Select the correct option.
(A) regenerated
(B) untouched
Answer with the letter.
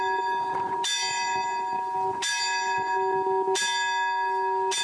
B